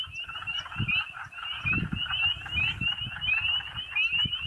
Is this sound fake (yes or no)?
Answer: no